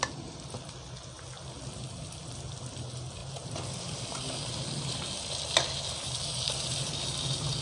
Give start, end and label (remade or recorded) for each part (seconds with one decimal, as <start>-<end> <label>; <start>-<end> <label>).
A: 0.0-7.6 recorded